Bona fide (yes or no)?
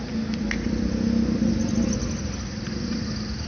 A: yes